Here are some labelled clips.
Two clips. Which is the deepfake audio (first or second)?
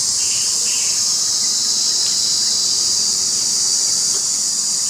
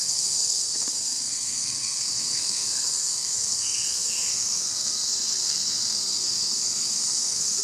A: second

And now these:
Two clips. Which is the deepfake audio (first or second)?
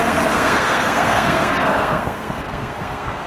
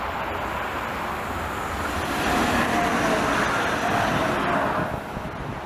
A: first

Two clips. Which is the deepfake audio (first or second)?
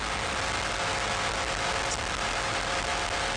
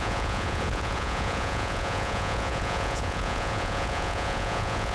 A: second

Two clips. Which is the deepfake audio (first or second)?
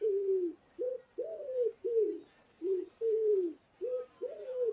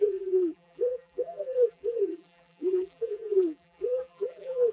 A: second